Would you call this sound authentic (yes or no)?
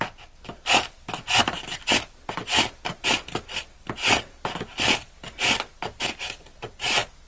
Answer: yes